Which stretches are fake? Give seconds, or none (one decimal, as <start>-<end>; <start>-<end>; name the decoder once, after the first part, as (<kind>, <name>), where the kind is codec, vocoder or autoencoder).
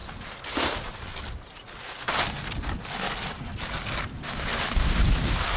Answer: none